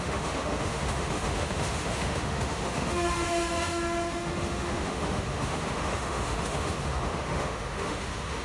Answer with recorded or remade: remade